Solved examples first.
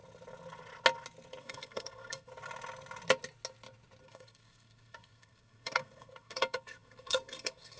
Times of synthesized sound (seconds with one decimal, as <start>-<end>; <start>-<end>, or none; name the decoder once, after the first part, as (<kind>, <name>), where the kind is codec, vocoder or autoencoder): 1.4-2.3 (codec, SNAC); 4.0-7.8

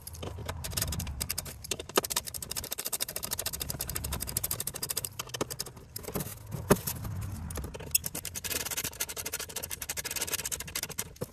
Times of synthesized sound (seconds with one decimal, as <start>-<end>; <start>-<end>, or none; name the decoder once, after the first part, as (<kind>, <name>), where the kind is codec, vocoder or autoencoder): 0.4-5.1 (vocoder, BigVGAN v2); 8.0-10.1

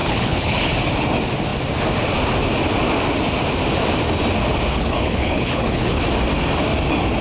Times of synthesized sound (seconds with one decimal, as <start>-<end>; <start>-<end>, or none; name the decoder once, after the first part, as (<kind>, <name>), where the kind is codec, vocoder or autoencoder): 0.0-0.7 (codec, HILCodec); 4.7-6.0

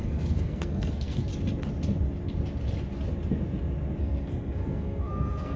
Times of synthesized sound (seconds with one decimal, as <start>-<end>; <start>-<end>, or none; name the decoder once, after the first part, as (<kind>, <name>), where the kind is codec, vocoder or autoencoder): 0.0-1.3 (codec, SNAC); 4.0-5.6

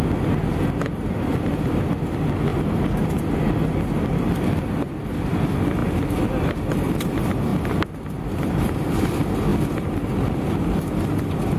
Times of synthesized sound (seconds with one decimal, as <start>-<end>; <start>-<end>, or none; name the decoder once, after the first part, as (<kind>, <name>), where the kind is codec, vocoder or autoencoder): none

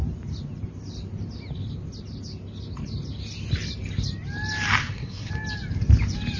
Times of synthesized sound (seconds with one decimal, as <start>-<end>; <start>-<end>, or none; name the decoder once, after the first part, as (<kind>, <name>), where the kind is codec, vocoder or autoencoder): 4.8-5.3 (codec, SNAC)

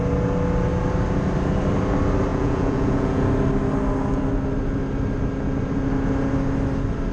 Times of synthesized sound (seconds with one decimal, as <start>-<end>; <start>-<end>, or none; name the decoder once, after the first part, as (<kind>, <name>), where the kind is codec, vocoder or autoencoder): 2.3-3.3 (vocoder, Vocos)

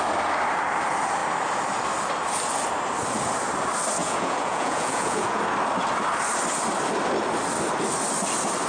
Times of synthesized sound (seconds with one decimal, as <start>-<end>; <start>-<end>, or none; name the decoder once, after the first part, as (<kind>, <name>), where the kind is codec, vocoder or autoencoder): 4.0-5.4 (vocoder, Vocos)